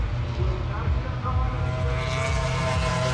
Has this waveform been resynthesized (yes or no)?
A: no